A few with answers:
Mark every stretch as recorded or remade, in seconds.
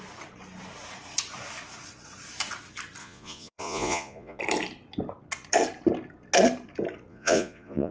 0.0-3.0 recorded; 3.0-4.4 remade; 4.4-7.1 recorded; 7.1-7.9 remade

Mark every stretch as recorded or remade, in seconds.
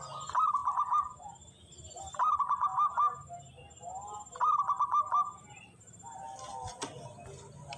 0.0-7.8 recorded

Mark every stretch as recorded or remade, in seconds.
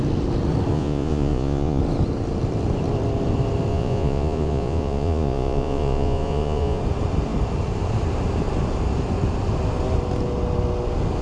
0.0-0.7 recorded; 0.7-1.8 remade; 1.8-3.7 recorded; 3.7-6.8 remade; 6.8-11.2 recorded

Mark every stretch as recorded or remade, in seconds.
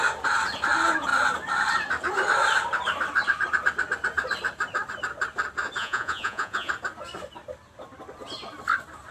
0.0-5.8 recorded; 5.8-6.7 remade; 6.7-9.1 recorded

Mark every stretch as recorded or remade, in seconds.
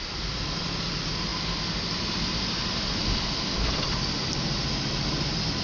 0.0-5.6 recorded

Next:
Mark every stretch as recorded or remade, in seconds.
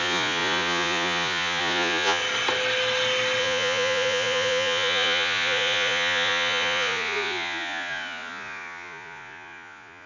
0.0-2.2 remade; 2.2-3.4 recorded; 3.4-10.1 remade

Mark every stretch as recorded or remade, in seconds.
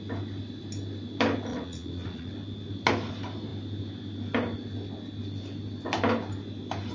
0.0-1.5 recorded; 1.5-2.3 remade; 2.3-6.9 recorded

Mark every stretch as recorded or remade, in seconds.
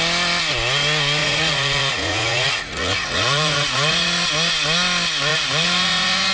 0.0-1.2 recorded; 1.2-4.3 remade; 4.3-5.3 recorded; 5.3-6.3 remade